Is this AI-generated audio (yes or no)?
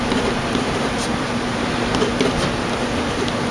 no